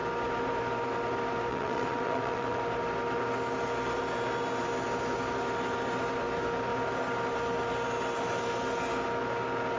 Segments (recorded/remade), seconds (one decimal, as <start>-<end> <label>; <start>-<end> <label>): 0.0-1.5 recorded; 1.5-2.6 remade; 2.6-9.8 recorded